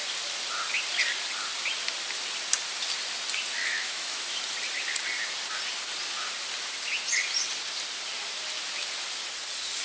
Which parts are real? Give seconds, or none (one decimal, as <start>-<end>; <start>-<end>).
0.0-3.6; 4.4-9.8